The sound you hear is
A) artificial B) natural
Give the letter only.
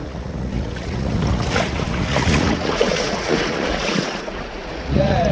A